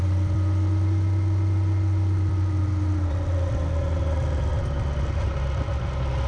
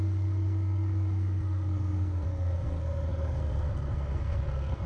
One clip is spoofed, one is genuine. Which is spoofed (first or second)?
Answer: second